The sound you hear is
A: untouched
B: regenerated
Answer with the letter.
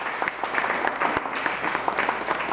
A